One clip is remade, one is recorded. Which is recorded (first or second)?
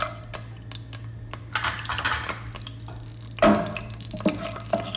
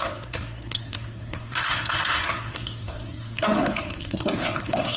first